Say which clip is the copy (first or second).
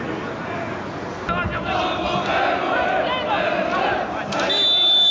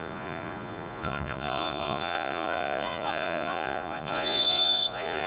second